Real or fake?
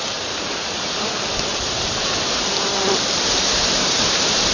fake